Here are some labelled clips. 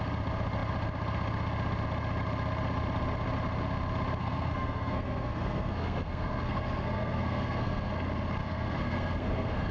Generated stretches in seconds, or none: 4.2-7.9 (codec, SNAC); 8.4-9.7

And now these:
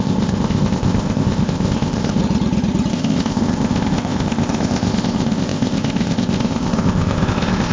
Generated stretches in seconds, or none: 0.0-2.2 (codec, ZipCodec); 2.9-7.7

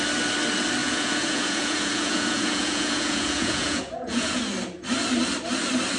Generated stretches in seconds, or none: 0.8-4.4 (vocoder, Vocos)

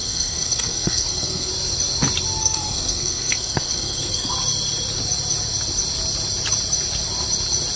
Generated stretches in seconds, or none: 0.0-1.5 (codec, SNAC); 2.4-4.3

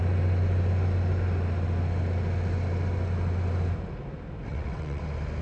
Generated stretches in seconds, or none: 4.5-5.0 (vocoder, WaveNeXt)

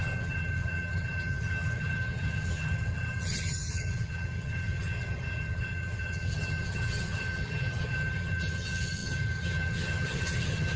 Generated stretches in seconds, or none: 0.0-10.8 (vocoder, HiFi-GAN)

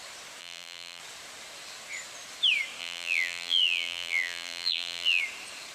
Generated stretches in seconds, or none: 0.4-1.0 (vocoder, BigVGAN v2); 2.8-5.2

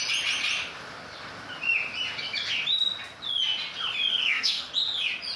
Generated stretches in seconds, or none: 4.1-4.7 (codec, SNAC)